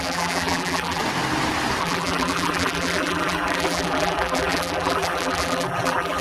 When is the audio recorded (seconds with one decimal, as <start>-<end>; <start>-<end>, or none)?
1.0-1.8